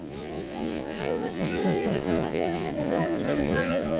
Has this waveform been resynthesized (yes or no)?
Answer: yes